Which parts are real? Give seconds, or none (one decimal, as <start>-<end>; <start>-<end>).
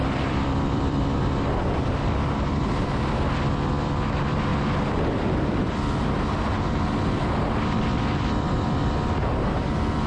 1.5-4.5; 6.0-10.1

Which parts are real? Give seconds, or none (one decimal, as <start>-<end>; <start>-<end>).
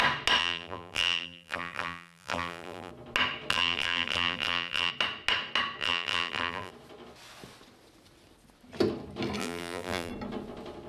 0.0-0.4; 2.9-3.5; 4.9-5.8; 6.7-9.4; 10.1-10.9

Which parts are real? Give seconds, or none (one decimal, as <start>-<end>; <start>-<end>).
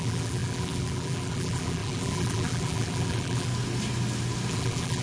3.5-4.5